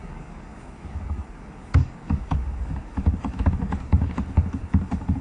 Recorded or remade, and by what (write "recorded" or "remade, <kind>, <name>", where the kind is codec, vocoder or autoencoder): remade, codec, DAC